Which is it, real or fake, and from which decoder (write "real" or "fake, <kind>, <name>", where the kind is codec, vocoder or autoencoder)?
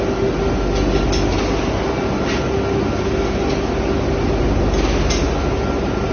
real